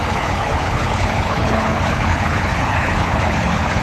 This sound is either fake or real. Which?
fake